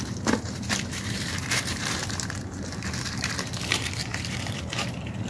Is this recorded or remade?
remade